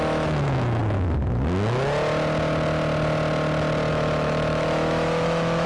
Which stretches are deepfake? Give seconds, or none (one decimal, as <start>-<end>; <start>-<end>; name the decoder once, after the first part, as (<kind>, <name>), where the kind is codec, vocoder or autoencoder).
0.0-0.8 (autoencoder, DAC-VAE); 3.9-5.7